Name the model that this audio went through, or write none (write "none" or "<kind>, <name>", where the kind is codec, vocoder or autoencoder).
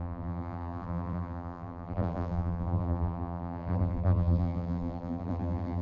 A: vocoder, BigVGAN v2